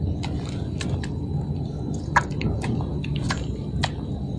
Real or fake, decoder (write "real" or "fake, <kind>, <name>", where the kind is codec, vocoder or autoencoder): real